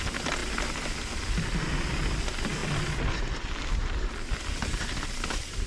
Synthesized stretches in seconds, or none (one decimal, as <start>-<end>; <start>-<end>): none